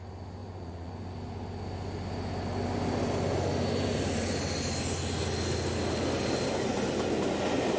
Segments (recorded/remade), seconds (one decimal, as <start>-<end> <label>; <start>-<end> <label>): 0.0-0.4 recorded; 0.4-1.1 remade; 1.1-7.8 recorded